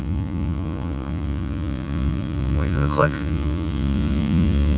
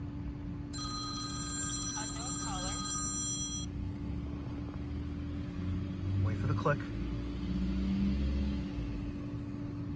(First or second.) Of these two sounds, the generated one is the first